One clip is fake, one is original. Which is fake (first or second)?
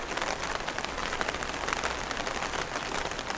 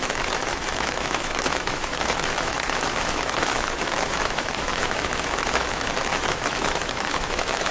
second